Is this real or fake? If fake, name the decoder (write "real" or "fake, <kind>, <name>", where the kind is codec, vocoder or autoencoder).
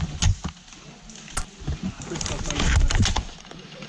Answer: real